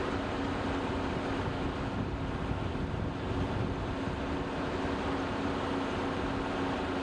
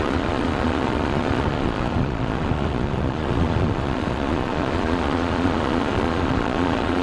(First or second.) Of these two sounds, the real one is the first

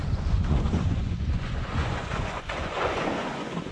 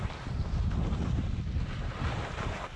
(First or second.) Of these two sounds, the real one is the second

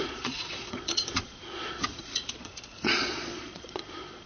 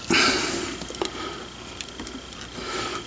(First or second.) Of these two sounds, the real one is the second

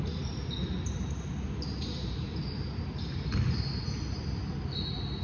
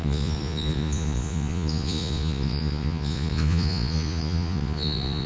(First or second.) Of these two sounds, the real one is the first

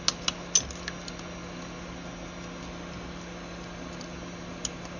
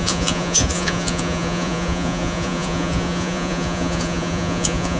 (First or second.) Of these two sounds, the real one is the first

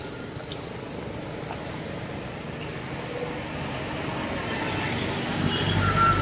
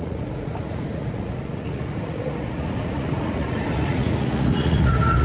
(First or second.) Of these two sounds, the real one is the first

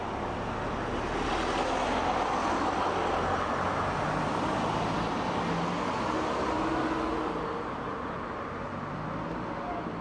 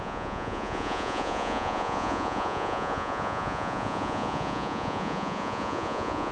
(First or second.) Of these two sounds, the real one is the first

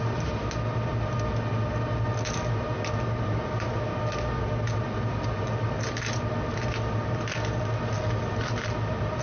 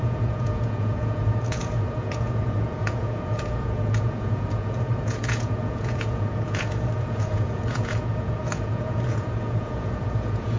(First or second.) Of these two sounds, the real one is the first